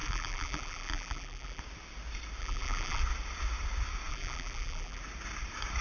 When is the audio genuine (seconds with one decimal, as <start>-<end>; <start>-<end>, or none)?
1.6-2.4; 3.0-4.1; 5.0-5.8